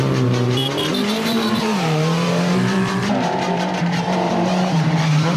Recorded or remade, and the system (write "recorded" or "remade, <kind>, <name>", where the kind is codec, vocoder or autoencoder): remade, vocoder, BigVGAN v2